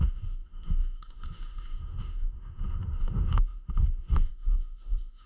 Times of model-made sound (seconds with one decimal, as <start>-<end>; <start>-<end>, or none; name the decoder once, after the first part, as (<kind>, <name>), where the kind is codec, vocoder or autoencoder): 0.0-5.3 (autoencoder, DAC-VAE)